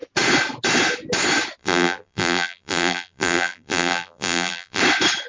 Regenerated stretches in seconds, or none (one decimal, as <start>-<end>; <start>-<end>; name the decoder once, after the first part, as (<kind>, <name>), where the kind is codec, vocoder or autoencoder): 1.6-4.8 (vocoder, BigVGAN v2)